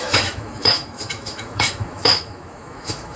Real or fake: fake